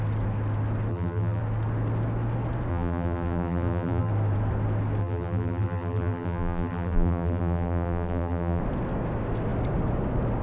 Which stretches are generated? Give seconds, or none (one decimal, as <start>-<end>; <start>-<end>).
0.9-1.4; 2.7-4.1; 5.0-8.6